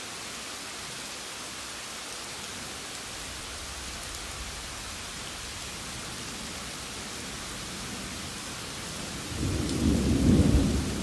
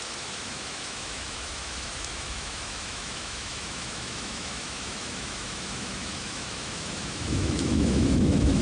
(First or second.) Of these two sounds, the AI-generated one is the second